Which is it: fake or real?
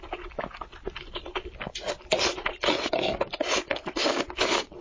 real